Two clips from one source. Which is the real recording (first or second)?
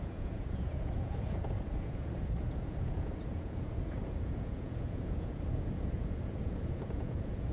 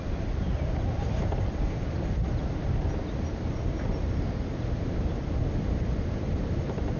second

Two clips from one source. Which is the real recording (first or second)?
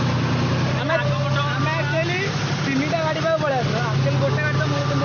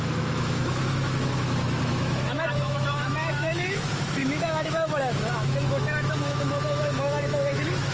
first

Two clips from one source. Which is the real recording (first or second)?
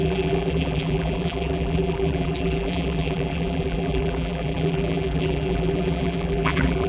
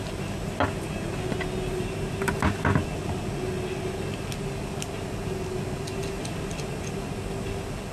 second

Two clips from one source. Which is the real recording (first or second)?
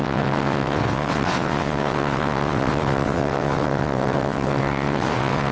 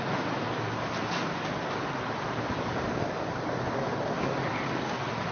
second